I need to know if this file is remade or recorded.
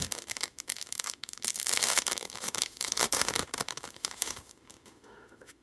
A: remade